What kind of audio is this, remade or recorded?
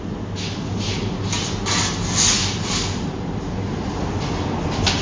recorded